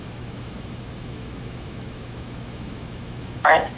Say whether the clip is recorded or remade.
remade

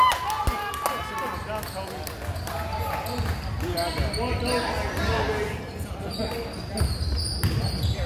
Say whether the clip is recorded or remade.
recorded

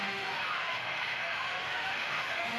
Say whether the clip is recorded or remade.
remade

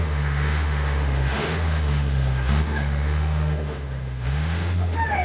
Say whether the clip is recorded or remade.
remade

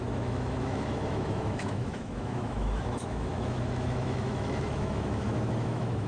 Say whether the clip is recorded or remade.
remade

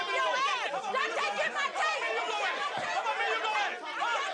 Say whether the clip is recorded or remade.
recorded